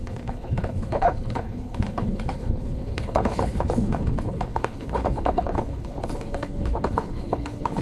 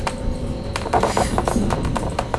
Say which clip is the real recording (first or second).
second